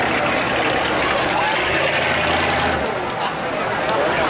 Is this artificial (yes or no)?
no